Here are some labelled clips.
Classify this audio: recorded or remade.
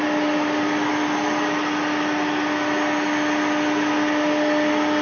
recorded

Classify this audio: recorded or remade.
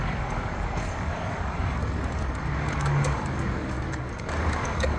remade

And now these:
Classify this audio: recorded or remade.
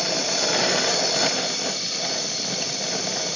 recorded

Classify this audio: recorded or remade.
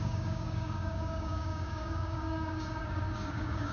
remade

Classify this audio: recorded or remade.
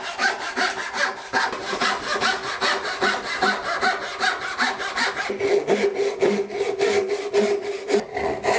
recorded